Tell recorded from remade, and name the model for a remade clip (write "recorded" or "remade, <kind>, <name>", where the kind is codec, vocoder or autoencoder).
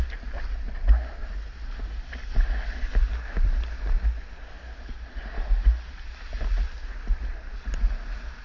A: recorded